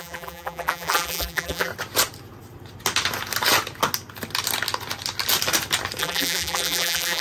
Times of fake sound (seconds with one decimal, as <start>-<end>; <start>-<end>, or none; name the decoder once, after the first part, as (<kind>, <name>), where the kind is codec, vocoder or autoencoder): 0.0-1.7 (vocoder, BigVGAN v2); 6.0-7.2